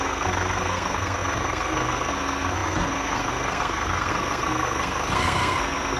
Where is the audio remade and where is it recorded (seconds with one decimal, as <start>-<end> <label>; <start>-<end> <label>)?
0.0-6.0 remade